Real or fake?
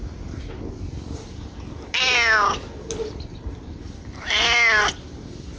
real